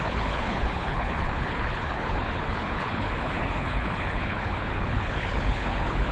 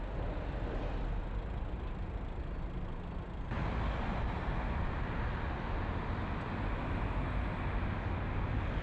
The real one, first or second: second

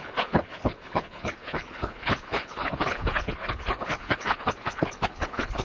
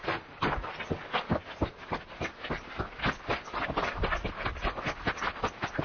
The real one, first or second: second